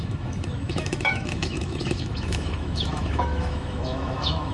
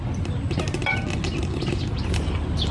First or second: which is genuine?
second